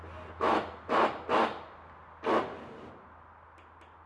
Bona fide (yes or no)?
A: yes